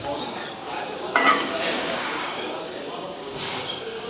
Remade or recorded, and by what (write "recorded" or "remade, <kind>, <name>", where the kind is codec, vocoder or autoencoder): remade, codec, DAC